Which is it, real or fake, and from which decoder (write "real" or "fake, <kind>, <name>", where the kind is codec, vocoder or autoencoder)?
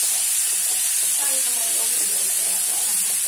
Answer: real